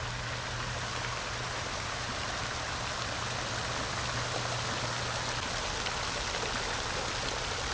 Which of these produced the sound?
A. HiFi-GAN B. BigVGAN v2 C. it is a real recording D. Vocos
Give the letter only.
C